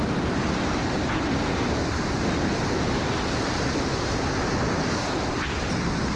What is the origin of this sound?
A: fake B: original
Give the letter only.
B